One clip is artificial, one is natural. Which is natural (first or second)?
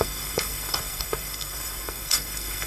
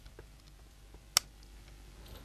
second